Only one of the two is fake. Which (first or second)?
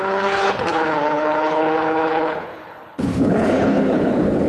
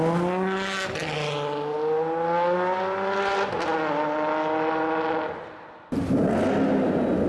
first